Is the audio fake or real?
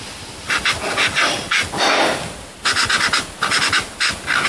real